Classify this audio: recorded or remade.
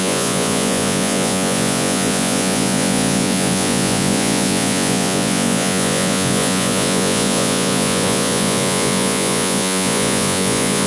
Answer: remade